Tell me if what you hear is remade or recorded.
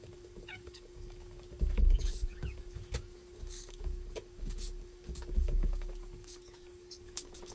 remade